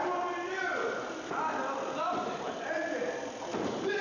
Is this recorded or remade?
recorded